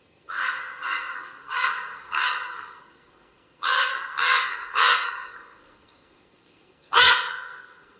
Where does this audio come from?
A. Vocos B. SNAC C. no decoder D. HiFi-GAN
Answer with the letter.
B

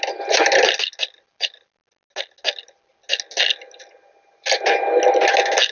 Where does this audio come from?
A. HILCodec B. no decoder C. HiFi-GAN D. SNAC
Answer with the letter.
B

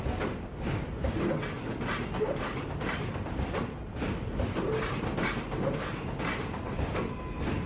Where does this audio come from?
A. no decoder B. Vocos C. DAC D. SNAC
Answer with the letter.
A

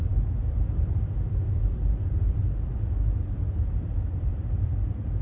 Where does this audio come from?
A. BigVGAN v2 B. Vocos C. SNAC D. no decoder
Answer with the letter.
D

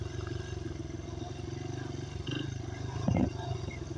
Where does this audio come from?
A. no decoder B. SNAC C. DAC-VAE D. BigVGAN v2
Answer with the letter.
A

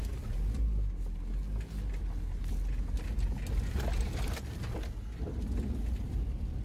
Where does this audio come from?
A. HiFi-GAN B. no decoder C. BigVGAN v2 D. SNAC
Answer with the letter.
B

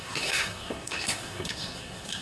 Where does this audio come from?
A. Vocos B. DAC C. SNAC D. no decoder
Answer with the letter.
C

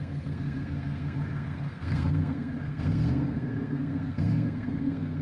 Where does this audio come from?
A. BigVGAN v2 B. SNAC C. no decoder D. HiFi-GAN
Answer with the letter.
B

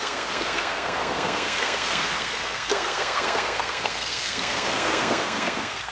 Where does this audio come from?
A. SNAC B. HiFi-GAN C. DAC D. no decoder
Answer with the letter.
A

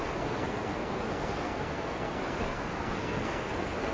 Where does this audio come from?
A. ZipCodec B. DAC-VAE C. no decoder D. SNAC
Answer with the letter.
D